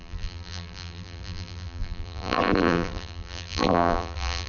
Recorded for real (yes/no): no